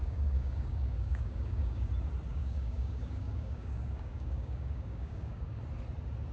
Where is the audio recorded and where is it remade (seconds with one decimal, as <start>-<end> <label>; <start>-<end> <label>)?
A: 0.0-1.9 remade; 1.9-2.3 recorded; 2.3-5.6 remade; 5.6-6.3 recorded